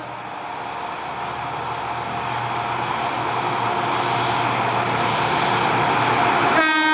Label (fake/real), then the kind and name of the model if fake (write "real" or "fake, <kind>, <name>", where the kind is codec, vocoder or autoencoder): real